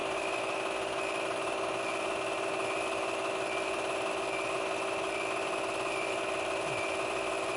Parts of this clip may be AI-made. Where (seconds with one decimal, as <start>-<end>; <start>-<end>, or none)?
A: none